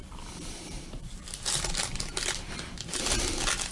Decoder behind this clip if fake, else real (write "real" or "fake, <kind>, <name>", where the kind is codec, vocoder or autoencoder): fake, vocoder, BigVGAN v2